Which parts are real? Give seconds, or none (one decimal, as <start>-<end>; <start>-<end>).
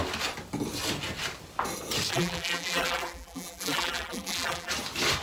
0.0-2.1; 4.7-5.2